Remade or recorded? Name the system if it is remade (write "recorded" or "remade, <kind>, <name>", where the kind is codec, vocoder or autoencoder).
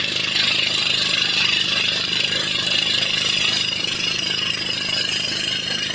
recorded